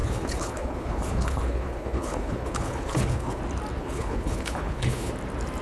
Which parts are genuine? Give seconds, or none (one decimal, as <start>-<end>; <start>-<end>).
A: 3.4-3.8; 5.1-5.6